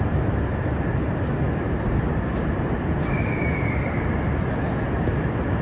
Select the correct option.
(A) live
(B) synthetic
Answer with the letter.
A